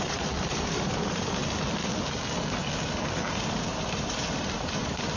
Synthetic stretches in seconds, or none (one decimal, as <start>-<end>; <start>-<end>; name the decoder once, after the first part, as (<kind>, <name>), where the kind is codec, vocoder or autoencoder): 0.0-1.4 (vocoder, BigVGAN v2); 3.3-5.2